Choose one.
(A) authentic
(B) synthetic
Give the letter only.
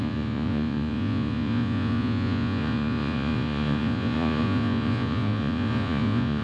B